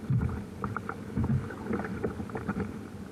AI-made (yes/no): no